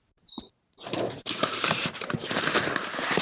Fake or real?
fake